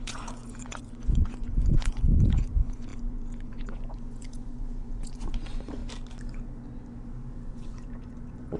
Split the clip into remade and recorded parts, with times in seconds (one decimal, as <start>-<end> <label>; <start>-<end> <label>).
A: 0.0-5.8 remade; 5.8-7.5 recorded; 7.5-8.6 remade

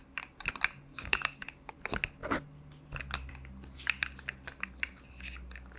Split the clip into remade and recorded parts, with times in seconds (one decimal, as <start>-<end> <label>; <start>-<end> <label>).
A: 0.0-0.9 recorded; 0.9-1.7 remade; 1.7-5.8 recorded

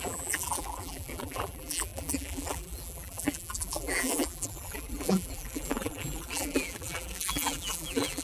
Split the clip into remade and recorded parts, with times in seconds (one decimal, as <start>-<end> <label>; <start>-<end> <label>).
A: 0.0-8.2 remade

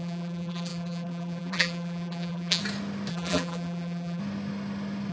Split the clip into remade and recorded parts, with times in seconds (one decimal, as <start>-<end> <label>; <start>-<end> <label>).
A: 0.0-2.6 remade; 2.6-3.1 recorded; 3.1-4.2 remade; 4.2-5.1 recorded

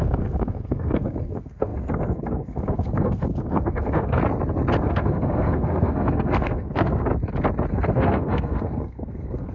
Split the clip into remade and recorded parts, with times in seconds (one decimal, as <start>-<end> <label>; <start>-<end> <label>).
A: 0.0-4.2 remade; 4.2-4.8 recorded; 4.8-7.1 remade; 7.1-7.7 recorded; 7.7-9.5 remade

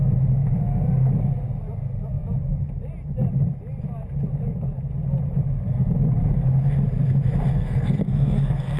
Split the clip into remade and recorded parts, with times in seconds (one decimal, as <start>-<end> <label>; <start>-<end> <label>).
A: 0.0-7.5 recorded; 7.5-8.8 remade